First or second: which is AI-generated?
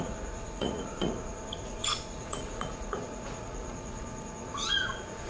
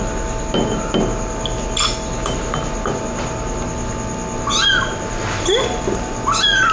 first